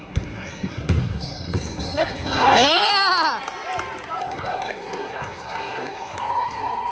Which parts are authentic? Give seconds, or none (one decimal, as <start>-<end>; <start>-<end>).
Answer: 2.9-4.2